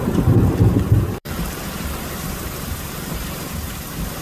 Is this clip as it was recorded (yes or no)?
no